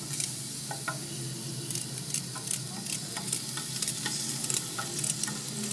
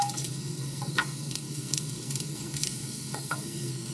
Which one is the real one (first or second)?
first